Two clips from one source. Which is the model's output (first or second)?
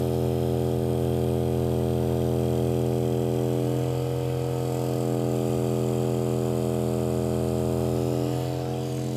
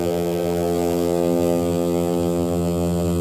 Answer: second